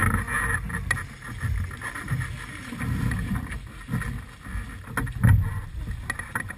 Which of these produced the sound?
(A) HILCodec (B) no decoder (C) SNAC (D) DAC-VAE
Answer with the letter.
B